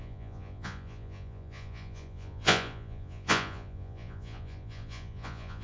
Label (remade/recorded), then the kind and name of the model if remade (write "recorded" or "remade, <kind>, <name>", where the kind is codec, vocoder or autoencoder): remade, vocoder, Vocos